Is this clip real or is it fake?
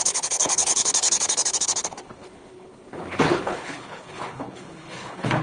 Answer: fake